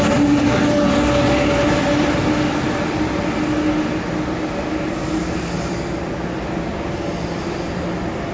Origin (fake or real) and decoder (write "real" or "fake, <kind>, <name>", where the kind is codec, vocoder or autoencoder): real